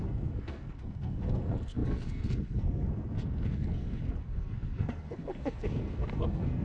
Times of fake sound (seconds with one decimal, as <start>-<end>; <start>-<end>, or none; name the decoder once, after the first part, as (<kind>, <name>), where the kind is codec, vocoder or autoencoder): 0.0-6.6 (codec, SNAC)